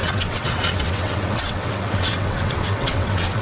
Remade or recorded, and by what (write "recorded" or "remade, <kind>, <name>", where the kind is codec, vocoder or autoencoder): remade, vocoder, WaveNeXt